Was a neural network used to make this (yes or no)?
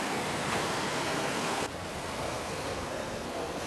yes